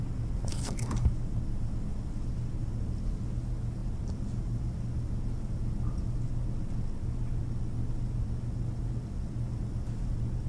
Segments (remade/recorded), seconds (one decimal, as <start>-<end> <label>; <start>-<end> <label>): 0.0-0.5 recorded; 0.5-1.1 remade; 1.1-10.5 recorded